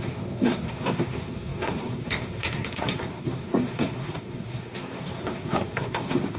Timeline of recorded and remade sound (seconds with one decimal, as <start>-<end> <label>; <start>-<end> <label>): 0.0-6.4 remade